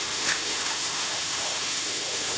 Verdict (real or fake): fake